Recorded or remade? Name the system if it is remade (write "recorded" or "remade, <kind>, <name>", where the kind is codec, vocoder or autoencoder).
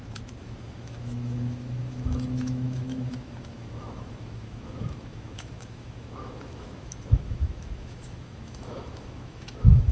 remade, autoencoder, DAC-VAE